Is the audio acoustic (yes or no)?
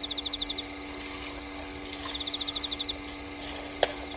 yes